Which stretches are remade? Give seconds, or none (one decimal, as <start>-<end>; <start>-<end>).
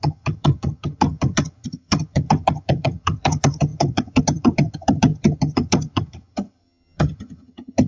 0.0-7.9